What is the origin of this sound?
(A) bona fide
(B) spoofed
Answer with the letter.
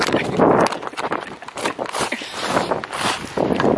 A